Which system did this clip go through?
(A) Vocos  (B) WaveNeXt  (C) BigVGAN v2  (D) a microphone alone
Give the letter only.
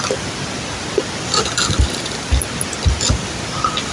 D